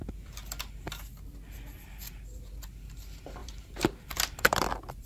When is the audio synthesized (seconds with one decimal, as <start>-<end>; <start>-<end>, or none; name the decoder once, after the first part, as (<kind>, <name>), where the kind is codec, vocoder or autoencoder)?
3.4-5.1 (vocoder, BigVGAN v2)